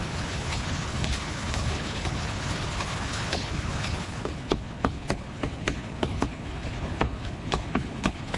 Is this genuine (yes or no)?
no